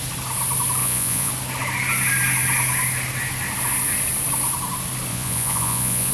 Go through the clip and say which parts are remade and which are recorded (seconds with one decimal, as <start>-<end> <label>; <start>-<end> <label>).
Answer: 0.0-0.8 recorded; 0.8-1.3 remade; 1.3-5.1 recorded; 5.1-6.1 remade